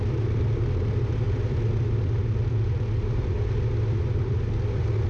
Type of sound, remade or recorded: recorded